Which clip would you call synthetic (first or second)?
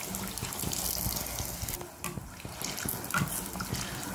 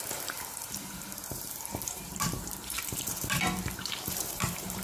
second